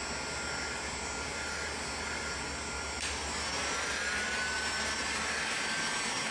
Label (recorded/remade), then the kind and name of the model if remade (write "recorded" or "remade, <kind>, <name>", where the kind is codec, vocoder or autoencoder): recorded